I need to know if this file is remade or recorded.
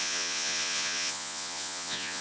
remade